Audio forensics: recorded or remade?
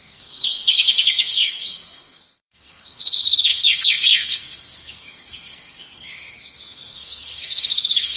remade